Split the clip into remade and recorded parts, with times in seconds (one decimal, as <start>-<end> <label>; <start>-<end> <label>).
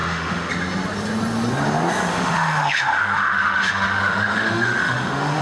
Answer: 0.0-0.5 remade; 0.5-2.1 recorded; 2.1-5.4 remade